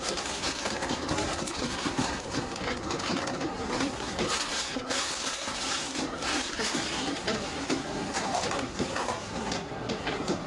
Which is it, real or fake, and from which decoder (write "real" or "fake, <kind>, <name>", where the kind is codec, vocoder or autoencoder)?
fake, codec, SNAC